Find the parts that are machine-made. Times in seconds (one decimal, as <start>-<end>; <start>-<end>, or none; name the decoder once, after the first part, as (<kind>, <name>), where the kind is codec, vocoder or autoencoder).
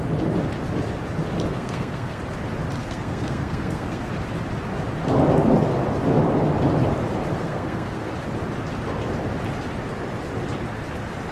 1.5-2.2 (codec, SNAC); 2.8-4.1; 7.3-8.1